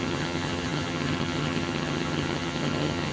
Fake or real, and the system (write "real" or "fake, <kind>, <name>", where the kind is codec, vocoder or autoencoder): fake, vocoder, HiFi-GAN